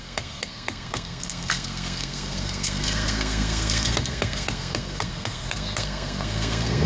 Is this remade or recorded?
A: remade